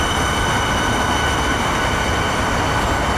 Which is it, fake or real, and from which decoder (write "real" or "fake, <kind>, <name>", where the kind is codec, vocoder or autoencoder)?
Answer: real